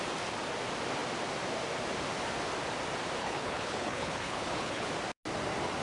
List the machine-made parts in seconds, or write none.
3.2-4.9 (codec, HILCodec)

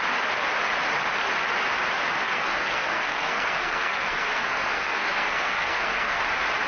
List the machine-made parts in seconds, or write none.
2.2-6.2 (codec, SNAC)

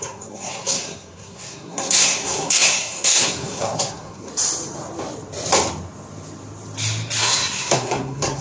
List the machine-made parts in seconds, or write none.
0.0-4.3 (codec, SNAC); 7.2-8.4

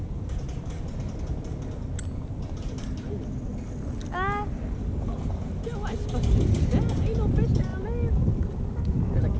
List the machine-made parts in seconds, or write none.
none

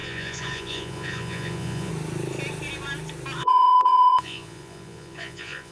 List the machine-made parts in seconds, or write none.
0.0-1.9 (vocoder, Vocos); 3.4-5.7

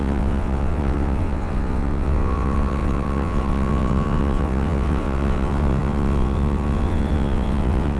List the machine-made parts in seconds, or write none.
0.0-8.0 (vocoder, WaveNeXt)

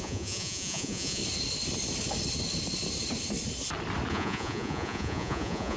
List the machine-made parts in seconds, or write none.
0.0-1.2 (vocoder, Vocos); 4.1-5.8

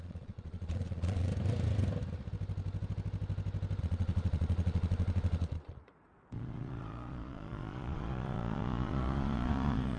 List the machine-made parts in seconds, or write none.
0.0-1.3 (vocoder, Vocos); 3.8-10.0